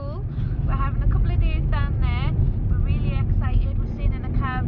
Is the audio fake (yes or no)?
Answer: no